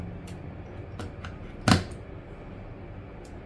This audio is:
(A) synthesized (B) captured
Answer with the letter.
B